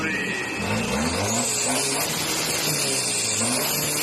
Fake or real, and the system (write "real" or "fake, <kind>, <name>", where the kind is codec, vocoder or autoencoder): real